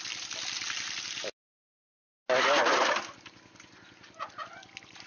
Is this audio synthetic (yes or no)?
no